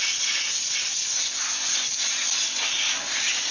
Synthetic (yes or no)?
no